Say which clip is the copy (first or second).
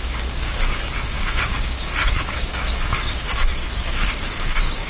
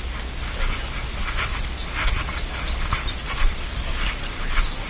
first